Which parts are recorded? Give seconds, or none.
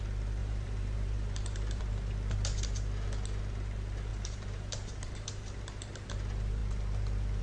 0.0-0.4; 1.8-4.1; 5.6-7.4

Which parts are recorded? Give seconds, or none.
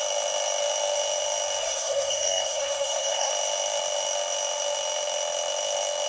0.0-1.6; 3.3-6.1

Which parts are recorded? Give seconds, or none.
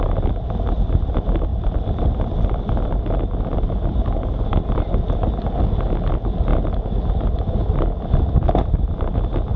0.0-1.5; 3.0-9.6